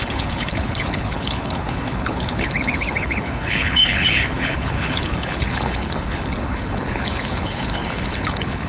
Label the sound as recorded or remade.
remade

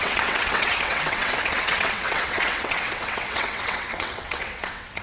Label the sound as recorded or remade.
remade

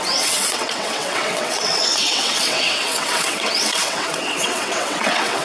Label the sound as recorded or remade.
remade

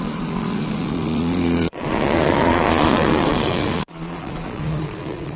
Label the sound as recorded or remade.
remade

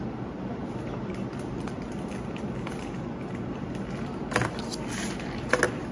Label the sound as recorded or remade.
recorded